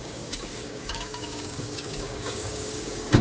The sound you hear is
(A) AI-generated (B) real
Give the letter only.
A